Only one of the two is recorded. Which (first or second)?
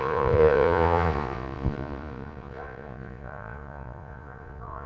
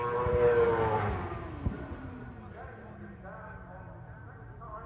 second